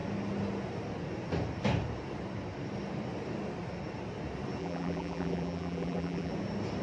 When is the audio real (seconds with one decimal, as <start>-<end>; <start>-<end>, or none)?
0.0-4.6; 6.3-6.8